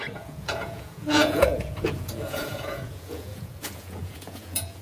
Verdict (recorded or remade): remade